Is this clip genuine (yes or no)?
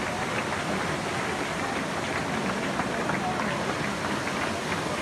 yes